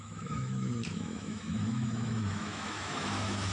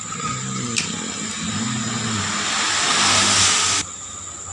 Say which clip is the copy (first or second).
first